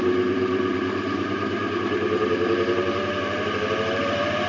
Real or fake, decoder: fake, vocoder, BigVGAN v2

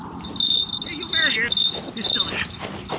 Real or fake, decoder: real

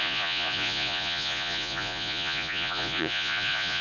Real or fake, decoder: fake, vocoder, Vocos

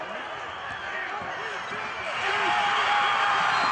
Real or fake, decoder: real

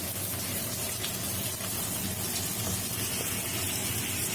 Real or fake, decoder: real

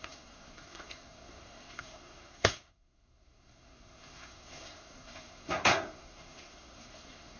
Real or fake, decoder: fake, codec, SNAC